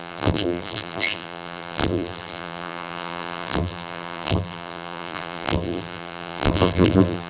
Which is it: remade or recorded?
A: remade